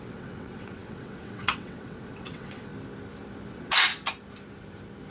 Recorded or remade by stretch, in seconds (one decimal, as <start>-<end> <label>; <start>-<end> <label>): 0.0-2.7 remade; 2.7-3.5 recorded; 3.5-3.9 remade; 3.9-5.1 recorded